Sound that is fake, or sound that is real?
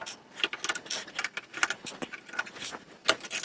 real